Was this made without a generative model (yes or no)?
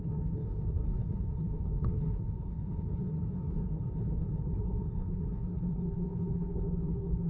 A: no